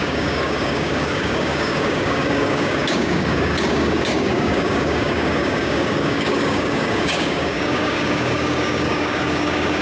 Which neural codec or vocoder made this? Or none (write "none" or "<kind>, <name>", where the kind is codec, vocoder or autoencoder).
codec, DAC